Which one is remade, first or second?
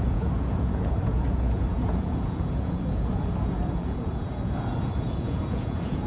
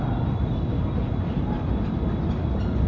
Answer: first